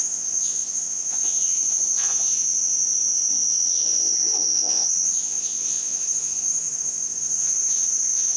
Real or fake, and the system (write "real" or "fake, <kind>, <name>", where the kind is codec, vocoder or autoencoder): fake, vocoder, Vocos